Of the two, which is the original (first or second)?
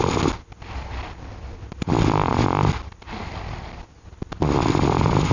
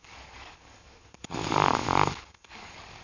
first